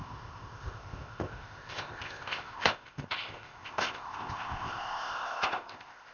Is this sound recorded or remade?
remade